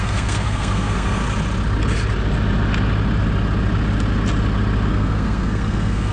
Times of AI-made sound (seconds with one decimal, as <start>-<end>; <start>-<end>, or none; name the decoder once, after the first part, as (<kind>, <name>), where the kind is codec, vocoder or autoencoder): 0.0-1.2 (codec, SNAC); 4.9-6.1